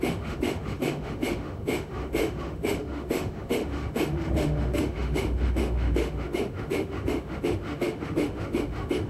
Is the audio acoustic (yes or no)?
no